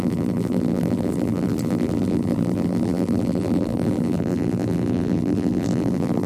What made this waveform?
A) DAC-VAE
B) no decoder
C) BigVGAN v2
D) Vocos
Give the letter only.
C